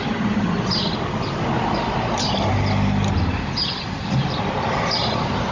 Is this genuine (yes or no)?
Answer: yes